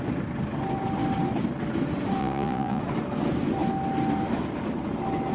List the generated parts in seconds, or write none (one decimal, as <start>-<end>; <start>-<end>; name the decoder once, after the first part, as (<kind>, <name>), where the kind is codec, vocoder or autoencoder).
2.2-2.8 (vocoder, Vocos)